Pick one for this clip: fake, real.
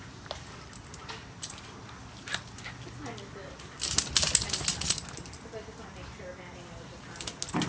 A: real